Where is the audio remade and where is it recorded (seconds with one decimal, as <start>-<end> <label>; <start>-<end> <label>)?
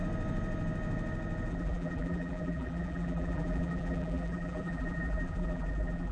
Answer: 0.0-1.5 recorded; 1.5-6.1 remade